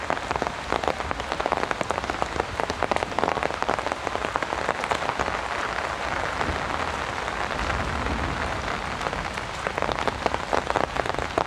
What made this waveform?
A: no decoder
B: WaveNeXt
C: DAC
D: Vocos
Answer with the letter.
A